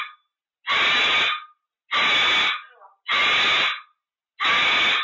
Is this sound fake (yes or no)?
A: no